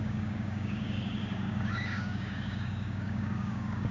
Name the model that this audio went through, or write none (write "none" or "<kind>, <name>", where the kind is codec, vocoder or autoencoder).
codec, DAC